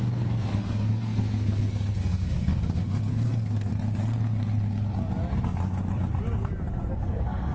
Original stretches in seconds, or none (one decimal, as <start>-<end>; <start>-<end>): 3.7-6.9